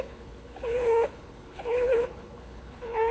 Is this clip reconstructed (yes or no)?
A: yes